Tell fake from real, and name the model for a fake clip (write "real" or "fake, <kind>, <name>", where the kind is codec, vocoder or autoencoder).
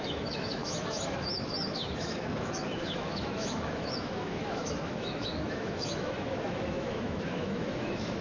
fake, autoencoder, DAC-VAE